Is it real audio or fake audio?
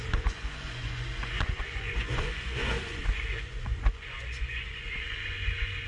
fake